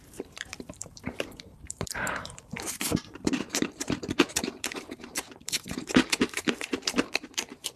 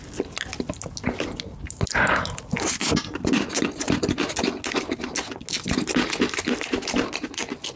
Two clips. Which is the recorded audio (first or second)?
second